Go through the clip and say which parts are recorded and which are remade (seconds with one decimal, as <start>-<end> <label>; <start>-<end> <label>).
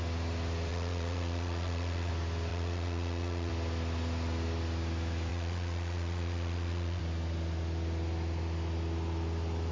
0.0-0.7 recorded; 0.7-2.1 remade; 2.1-2.5 recorded; 2.5-3.5 remade; 3.5-5.3 recorded; 5.3-7.0 remade; 7.0-9.7 recorded